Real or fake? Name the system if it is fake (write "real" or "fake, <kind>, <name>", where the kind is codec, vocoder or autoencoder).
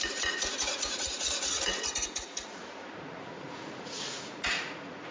fake, vocoder, Vocos